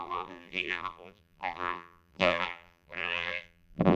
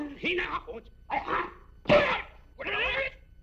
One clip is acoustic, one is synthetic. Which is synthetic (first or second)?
first